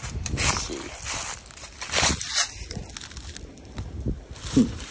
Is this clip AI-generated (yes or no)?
no